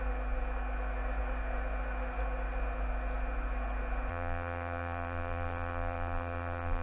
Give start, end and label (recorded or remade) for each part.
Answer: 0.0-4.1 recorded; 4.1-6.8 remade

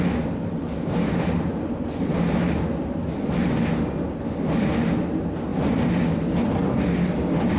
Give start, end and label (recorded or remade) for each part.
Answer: 0.0-1.5 recorded; 1.5-2.2 remade; 2.2-5.5 recorded; 5.5-6.8 remade; 6.8-7.6 recorded

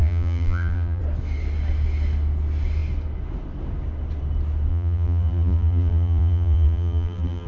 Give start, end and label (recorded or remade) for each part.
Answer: 0.0-1.0 remade; 1.0-4.7 recorded; 4.7-7.5 remade

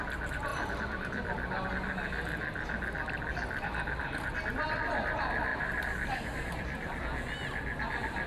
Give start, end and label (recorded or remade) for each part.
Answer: 0.0-0.5 recorded; 0.5-1.7 remade; 1.7-5.5 recorded; 5.5-7.0 remade; 7.0-8.3 recorded

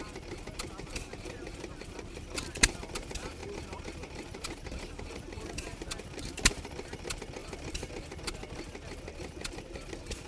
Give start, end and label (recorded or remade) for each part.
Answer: 0.0-0.9 recorded; 0.9-2.9 remade; 2.9-3.4 recorded; 3.4-5.8 remade; 5.8-7.4 recorded; 7.4-7.9 remade; 7.9-10.3 recorded

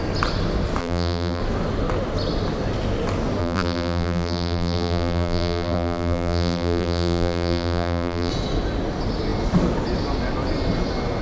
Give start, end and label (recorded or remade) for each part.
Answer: 0.0-0.8 recorded; 0.8-1.4 remade; 1.4-3.4 recorded; 3.4-8.3 remade; 8.3-11.2 recorded

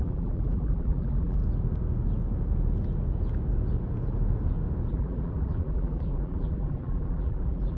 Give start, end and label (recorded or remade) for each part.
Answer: 0.0-1.4 remade; 1.4-4.9 recorded; 4.9-7.8 remade

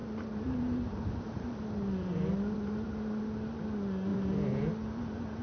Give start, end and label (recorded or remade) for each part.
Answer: 0.0-3.2 remade; 3.2-4.1 recorded; 4.1-4.6 remade; 4.6-5.4 recorded